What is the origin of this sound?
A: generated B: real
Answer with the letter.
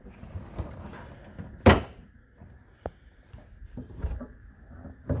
B